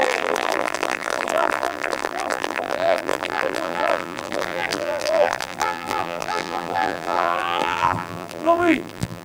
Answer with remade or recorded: remade